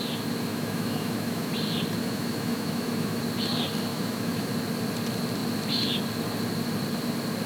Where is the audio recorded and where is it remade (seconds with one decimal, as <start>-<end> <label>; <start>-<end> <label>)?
0.0-0.5 recorded; 0.5-1.5 remade; 1.5-2.0 recorded; 2.0-3.2 remade; 3.2-3.9 recorded; 3.9-4.5 remade; 4.5-7.5 recorded